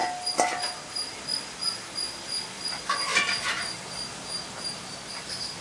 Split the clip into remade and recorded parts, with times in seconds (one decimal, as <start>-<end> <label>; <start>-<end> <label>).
0.0-0.9 recorded; 0.9-5.6 remade